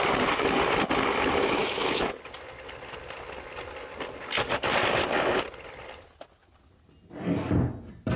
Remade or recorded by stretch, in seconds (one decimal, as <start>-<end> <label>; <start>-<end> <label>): 0.0-1.6 recorded; 1.6-2.2 remade; 2.2-8.2 recorded